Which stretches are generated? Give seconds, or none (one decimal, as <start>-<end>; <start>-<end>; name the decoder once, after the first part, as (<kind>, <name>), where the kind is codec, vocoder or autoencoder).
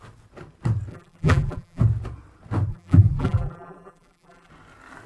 0.9-1.8 (vocoder, BigVGAN v2); 2.7-4.5